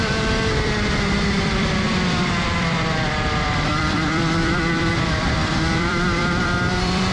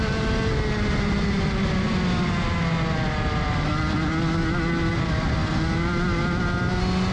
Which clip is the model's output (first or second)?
first